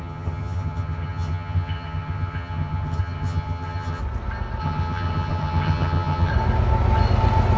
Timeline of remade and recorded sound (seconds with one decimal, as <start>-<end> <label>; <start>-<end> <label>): 0.0-4.0 remade; 4.0-4.6 recorded; 4.6-6.3 remade; 6.3-7.6 recorded